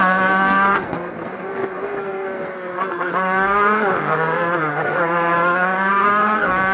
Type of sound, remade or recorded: remade